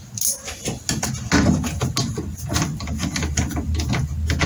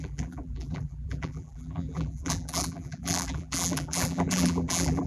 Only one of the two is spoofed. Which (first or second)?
second